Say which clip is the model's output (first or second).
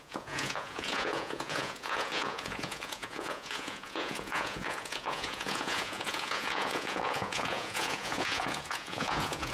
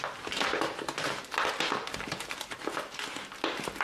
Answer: first